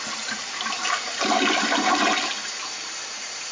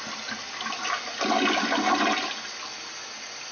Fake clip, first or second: first